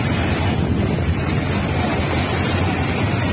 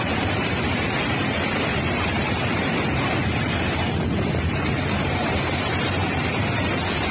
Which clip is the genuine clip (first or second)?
first